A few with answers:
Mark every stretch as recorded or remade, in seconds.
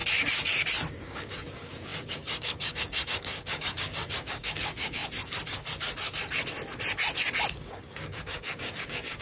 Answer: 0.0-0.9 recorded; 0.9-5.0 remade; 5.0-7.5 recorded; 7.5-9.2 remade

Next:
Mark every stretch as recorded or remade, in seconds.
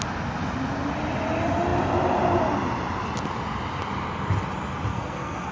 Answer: 0.0-4.9 recorded; 4.9-5.5 remade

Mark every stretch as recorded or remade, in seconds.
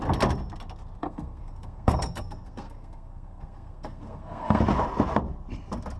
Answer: 0.0-1.0 recorded; 1.0-4.6 remade; 4.6-6.0 recorded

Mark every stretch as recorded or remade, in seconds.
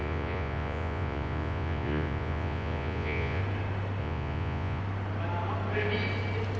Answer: 0.0-3.4 remade; 3.4-4.0 recorded; 4.0-4.8 remade; 4.8-6.6 recorded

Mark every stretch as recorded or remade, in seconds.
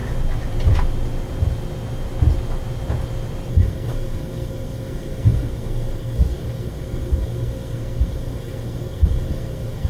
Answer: 0.0-3.5 recorded; 3.5-9.9 remade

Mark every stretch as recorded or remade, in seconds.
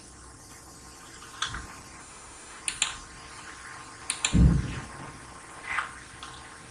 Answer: 0.0-2.0 recorded; 2.0-2.6 remade; 2.6-6.7 recorded